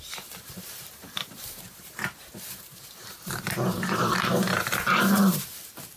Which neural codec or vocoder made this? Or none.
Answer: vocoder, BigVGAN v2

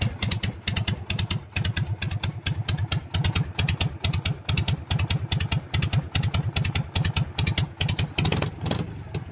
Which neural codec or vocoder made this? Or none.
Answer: none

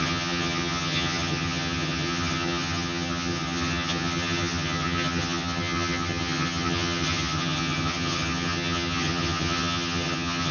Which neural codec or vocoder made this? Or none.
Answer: vocoder, HiFi-GAN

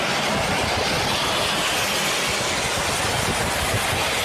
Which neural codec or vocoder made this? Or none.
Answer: none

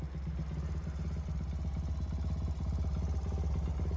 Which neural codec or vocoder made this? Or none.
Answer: none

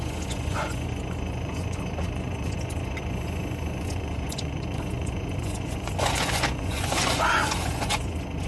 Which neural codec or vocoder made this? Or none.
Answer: vocoder, Vocos